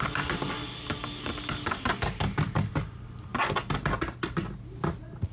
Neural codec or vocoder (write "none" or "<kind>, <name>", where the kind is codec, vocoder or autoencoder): none